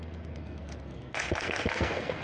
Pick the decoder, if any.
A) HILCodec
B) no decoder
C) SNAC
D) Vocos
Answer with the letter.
C